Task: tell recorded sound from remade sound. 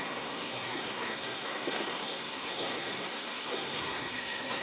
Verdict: remade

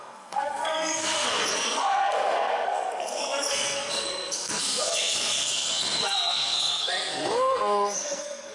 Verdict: remade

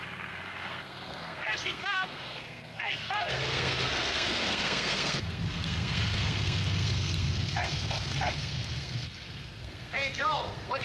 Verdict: remade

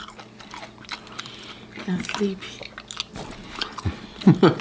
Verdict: recorded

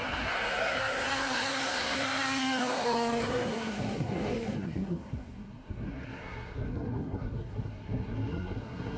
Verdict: remade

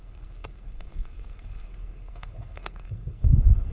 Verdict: remade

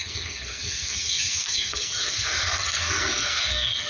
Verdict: remade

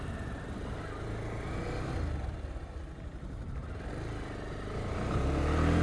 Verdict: recorded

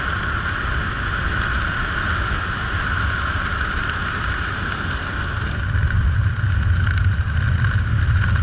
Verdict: recorded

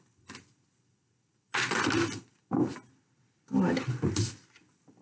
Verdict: recorded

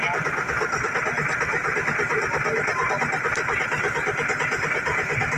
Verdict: recorded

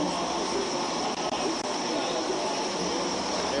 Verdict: recorded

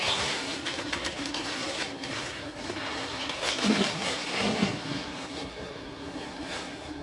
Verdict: remade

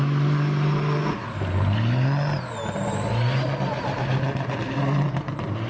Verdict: recorded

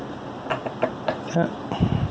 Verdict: recorded